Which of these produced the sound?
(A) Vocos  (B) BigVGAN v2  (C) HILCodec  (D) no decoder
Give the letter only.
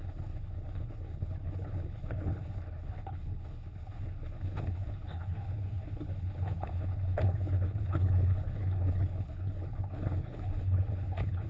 C